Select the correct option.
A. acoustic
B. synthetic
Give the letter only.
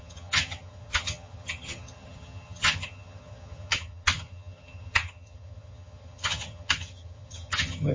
B